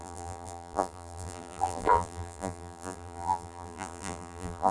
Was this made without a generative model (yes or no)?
no